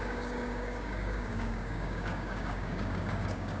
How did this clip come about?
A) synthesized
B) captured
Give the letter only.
A